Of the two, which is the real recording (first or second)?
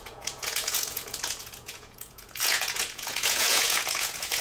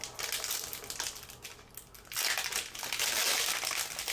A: second